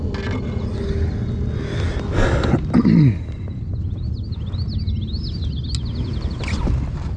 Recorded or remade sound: recorded